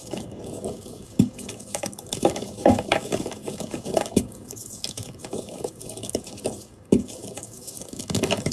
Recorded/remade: remade